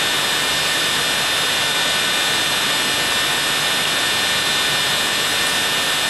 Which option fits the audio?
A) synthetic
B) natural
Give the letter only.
B